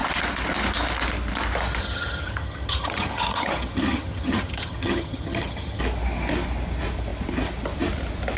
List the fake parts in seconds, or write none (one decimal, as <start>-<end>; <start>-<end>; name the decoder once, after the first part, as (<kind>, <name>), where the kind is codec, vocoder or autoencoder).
1.8-5.8 (vocoder, HiFi-GAN)